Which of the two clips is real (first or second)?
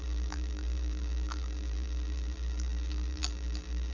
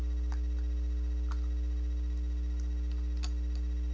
second